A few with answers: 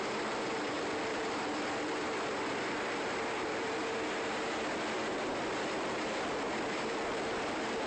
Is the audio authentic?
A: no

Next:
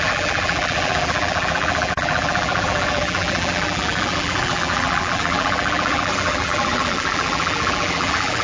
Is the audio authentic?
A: no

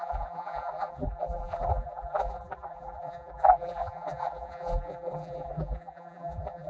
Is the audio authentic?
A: no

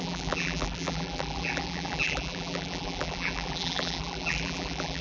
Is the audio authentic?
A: no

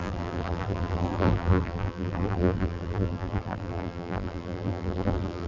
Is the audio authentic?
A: no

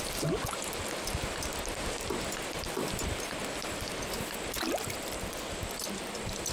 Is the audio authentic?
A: yes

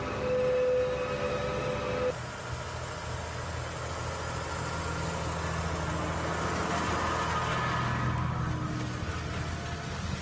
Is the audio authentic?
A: yes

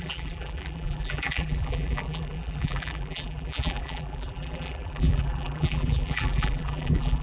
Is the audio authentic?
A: no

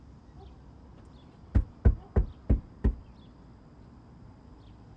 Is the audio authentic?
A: yes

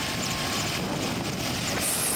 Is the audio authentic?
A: yes